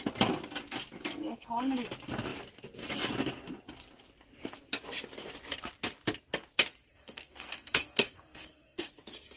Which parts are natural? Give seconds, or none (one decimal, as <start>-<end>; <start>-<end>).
0.0-1.3; 1.9-6.9; 8.9-9.4